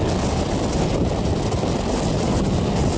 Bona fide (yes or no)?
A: yes